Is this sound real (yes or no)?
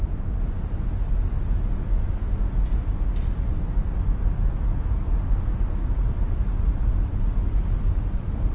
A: yes